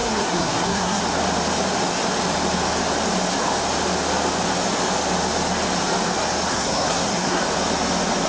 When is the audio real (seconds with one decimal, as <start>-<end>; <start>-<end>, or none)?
1.0-6.5; 7.4-8.3